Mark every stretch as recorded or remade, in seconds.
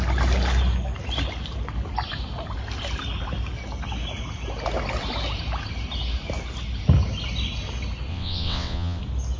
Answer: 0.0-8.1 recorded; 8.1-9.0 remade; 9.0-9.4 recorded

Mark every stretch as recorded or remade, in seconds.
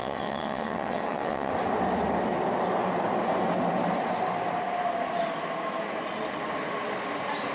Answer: 0.0-1.5 remade; 1.5-7.5 recorded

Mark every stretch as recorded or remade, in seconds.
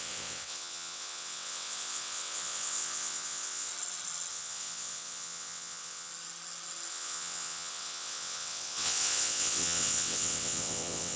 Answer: 0.0-3.7 remade; 3.7-4.3 recorded; 4.3-6.1 remade; 6.1-6.9 recorded; 6.9-11.2 remade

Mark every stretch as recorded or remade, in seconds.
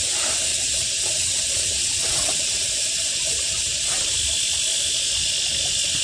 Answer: 0.0-0.5 recorded; 0.5-4.1 remade; 4.1-6.0 recorded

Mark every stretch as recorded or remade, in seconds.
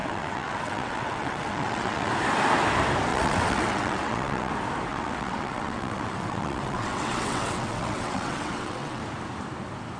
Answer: 0.0-2.1 remade; 2.1-3.1 recorded; 3.1-4.5 remade; 4.5-4.9 recorded; 4.9-9.0 remade; 9.0-10.0 recorded